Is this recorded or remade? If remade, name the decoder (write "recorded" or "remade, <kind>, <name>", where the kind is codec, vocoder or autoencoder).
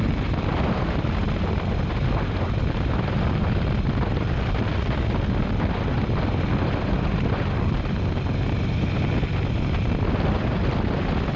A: recorded